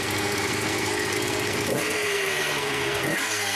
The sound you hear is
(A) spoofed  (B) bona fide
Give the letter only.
A